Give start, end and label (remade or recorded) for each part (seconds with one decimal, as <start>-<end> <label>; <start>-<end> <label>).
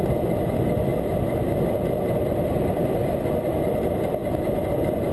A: 0.0-0.9 remade; 0.9-3.6 recorded; 3.6-5.1 remade